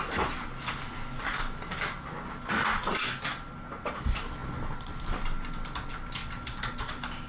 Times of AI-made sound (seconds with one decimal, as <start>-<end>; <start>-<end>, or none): none

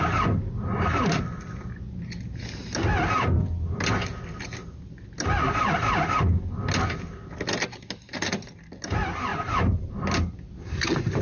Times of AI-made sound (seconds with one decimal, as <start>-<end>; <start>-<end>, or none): 9.3-9.9

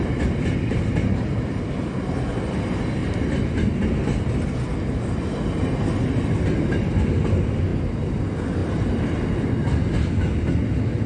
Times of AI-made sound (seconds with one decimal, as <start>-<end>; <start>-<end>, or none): 3.0-3.8; 7.7-8.2; 8.6-9.5

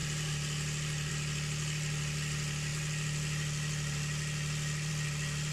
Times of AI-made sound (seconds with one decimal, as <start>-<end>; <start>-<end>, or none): none